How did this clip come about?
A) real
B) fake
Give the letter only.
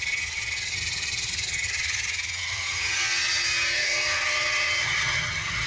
B